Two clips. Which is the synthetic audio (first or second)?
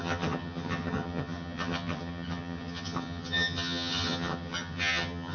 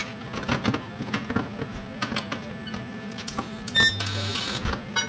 first